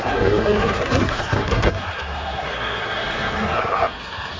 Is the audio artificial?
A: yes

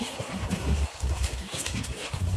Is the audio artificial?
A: yes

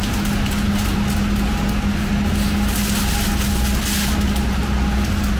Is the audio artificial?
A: no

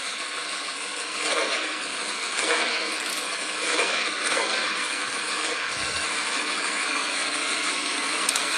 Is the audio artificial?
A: yes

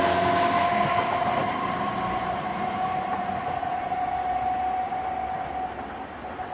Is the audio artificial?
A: no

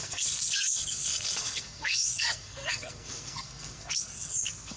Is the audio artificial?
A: yes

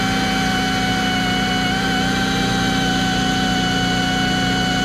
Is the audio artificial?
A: no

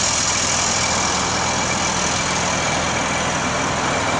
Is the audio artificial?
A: no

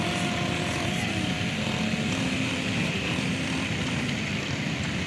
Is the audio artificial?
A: no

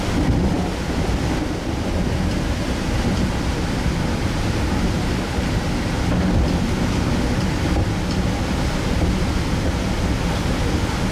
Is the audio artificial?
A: no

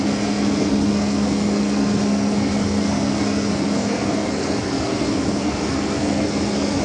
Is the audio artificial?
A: yes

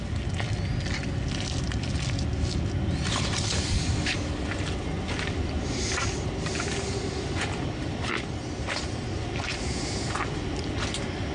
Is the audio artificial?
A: no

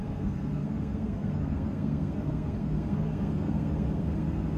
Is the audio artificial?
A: yes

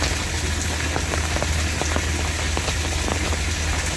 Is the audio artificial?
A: no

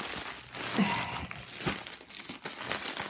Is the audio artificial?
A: no